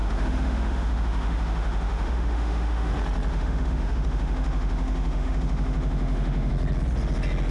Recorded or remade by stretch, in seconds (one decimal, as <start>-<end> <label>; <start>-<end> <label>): 0.0-2.9 remade; 2.9-3.3 recorded; 3.3-6.5 remade; 6.5-7.5 recorded

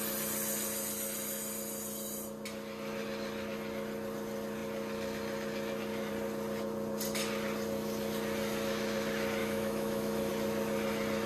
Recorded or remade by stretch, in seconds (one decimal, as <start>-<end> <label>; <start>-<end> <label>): 0.0-9.4 recorded; 9.4-10.3 remade; 10.3-11.3 recorded

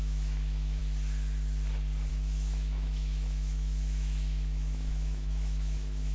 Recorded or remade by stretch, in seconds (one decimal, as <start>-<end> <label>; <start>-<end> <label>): 0.0-0.8 remade; 0.8-2.1 recorded; 2.1-6.1 remade

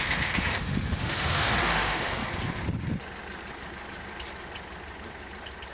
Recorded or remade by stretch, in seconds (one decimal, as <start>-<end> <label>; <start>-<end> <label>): 0.0-2.2 remade; 2.2-5.7 recorded

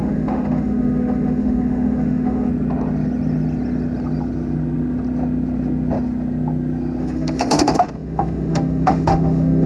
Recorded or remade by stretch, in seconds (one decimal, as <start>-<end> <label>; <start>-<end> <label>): 0.0-2.5 remade; 2.5-7.0 recorded; 7.0-9.7 remade

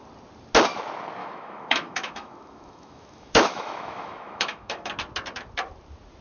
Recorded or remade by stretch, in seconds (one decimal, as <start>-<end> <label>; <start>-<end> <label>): 0.0-1.2 recorded; 1.2-4.9 remade; 4.9-6.2 recorded

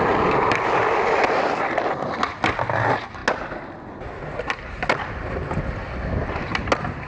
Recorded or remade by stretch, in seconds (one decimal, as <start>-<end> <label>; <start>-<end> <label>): 0.0-7.1 recorded

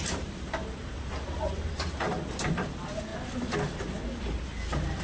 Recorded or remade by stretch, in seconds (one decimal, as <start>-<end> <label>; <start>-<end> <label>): 0.0-5.0 recorded